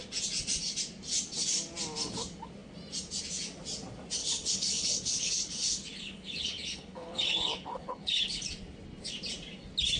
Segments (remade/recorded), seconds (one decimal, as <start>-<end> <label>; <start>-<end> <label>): 0.0-4.2 recorded; 4.2-8.4 remade; 8.4-10.0 recorded